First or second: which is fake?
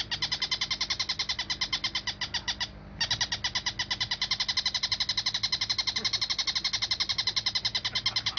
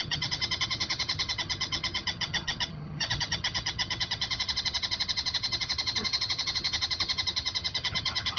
second